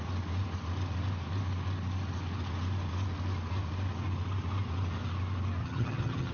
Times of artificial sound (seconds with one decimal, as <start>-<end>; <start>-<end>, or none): 5.6-6.3